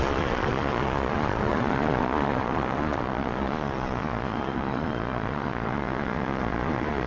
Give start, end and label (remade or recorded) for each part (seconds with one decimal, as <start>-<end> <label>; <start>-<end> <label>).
0.0-7.1 remade